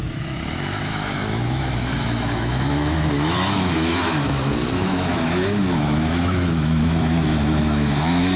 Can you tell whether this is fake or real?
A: fake